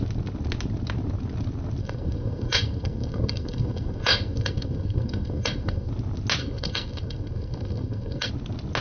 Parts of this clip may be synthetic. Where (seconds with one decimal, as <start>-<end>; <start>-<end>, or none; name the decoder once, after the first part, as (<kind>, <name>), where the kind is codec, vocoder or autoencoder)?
1.8-5.9 (codec, SNAC); 6.4-8.3